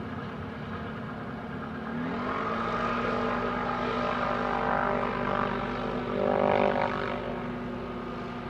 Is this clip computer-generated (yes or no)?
no